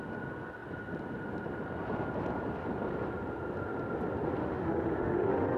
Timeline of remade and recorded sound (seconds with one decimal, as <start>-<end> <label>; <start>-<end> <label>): 0.0-4.4 recorded; 4.4-5.6 remade